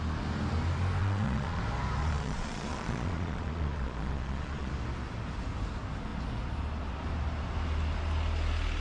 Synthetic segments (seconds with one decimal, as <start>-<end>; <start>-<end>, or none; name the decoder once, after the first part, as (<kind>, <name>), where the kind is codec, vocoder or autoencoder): 1.0-1.6 (vocoder, Vocos); 2.0-4.7